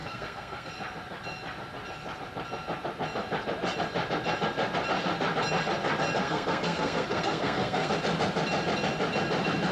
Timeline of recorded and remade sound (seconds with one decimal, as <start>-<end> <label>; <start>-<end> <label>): 0.0-0.7 remade; 0.7-6.2 recorded; 6.2-7.9 remade; 7.9-9.7 recorded